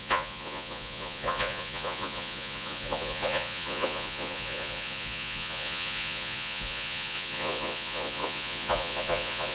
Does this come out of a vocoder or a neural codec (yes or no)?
yes